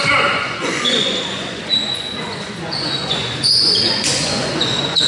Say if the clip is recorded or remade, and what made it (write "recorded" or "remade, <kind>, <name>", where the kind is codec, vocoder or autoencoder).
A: remade, vocoder, Vocos